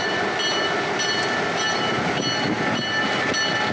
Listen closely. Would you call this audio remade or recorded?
recorded